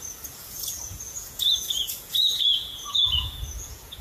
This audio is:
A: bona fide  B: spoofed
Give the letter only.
B